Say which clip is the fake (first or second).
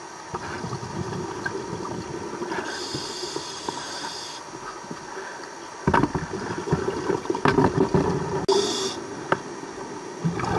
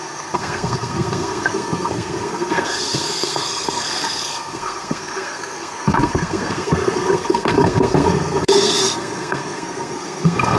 second